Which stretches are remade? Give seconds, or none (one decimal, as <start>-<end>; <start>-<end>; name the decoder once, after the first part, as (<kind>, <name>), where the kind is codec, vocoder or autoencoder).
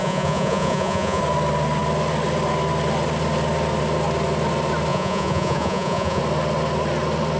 0.0-1.2 (vocoder, Vocos); 4.9-6.2